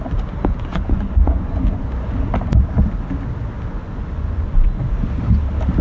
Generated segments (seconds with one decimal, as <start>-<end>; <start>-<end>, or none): 0.7-1.8; 3.7-4.8